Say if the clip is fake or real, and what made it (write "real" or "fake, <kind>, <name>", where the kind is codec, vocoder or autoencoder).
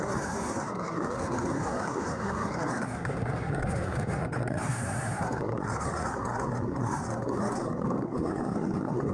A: fake, codec, SNAC